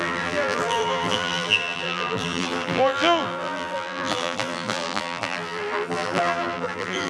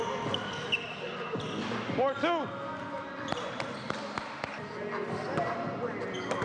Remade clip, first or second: first